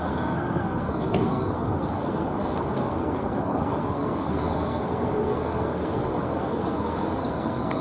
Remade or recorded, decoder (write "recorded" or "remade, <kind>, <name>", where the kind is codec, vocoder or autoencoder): remade, codec, SNAC